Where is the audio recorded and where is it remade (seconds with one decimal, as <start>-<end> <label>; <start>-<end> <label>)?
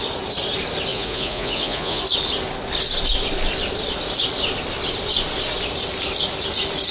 0.0-0.9 recorded; 0.9-2.0 remade; 2.0-6.9 recorded